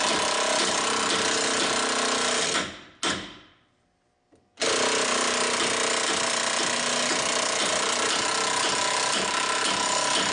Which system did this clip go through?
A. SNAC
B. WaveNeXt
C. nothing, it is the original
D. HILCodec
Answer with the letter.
C